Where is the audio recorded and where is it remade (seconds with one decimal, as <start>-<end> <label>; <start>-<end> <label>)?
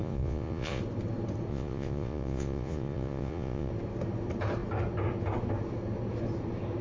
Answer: 0.0-0.8 remade; 0.8-1.5 recorded; 1.5-3.7 remade; 3.7-6.8 recorded